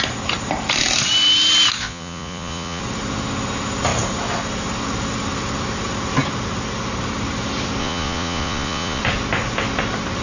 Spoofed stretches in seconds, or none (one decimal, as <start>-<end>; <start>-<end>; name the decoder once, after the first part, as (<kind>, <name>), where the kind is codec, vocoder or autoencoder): 1.8-2.8 (vocoder, Vocos); 7.8-9.0